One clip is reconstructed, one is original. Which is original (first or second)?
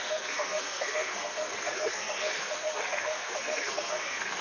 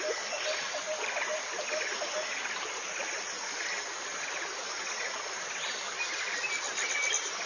second